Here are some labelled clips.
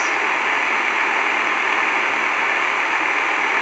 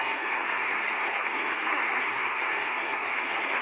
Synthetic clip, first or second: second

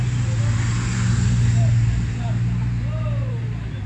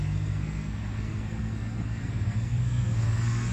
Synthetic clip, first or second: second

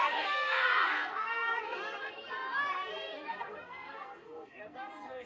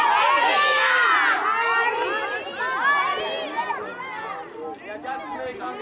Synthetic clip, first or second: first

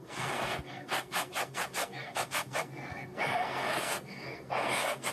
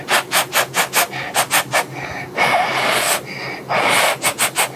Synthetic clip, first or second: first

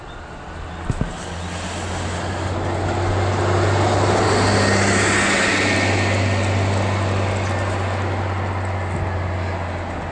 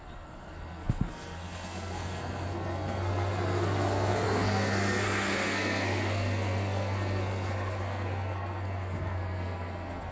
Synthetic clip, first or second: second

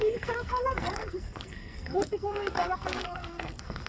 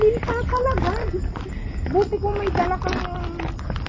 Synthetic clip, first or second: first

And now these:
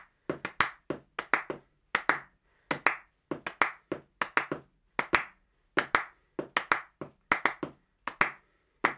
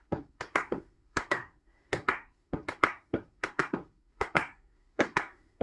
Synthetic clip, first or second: second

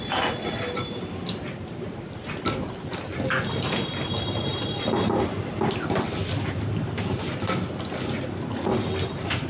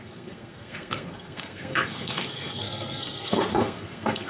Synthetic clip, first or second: second